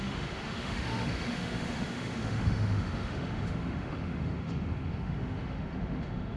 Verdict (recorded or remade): remade